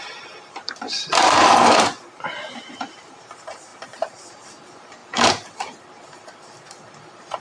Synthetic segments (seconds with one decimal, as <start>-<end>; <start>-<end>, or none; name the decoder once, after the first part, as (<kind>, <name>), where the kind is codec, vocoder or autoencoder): 0.0-5.0 (vocoder, BigVGAN v2)